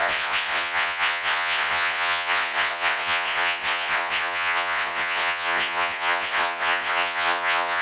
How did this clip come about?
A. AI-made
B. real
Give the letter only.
A